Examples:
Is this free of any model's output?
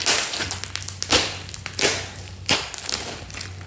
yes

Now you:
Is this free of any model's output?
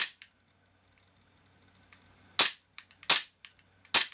yes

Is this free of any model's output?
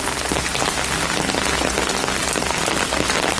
yes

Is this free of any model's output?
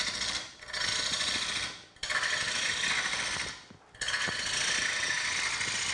yes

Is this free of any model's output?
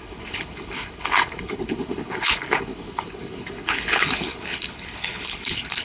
no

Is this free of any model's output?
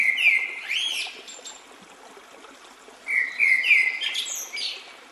yes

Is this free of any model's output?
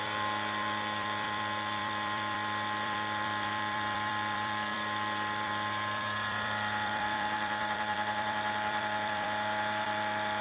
no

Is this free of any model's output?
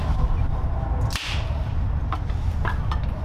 yes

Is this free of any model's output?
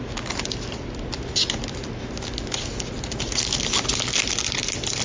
yes